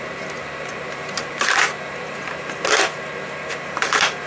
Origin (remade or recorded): remade